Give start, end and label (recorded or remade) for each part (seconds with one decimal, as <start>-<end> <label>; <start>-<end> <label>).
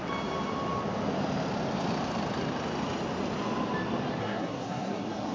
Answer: 0.0-4.2 recorded; 4.2-5.3 remade